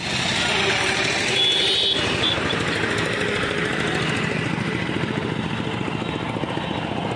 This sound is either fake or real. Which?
real